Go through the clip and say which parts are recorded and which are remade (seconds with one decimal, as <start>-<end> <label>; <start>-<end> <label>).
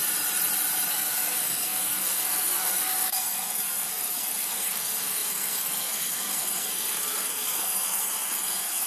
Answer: 0.0-0.9 recorded; 0.9-8.9 remade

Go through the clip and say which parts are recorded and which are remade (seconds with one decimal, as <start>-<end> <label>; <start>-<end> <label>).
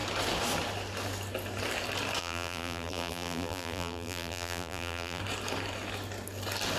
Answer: 0.0-2.2 recorded; 2.2-5.2 remade; 5.2-6.8 recorded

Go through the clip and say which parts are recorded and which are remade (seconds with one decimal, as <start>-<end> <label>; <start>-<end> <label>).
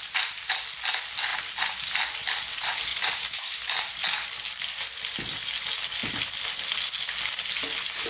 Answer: 0.0-2.9 recorded; 2.9-4.0 remade; 4.0-8.1 recorded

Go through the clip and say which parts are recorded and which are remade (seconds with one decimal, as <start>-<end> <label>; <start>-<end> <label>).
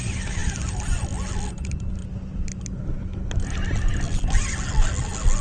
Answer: 0.0-5.4 recorded